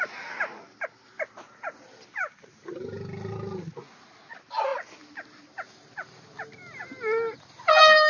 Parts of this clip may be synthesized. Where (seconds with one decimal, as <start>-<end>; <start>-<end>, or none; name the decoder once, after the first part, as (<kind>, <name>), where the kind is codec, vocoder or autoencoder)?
none